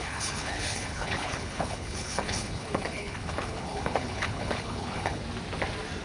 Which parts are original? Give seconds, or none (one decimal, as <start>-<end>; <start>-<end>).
5.2-6.0

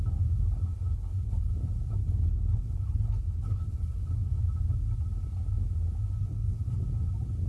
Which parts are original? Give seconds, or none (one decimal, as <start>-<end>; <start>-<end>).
0.0-0.9; 1.5-2.0; 4.3-6.2; 6.8-7.5